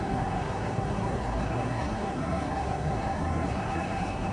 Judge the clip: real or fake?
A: fake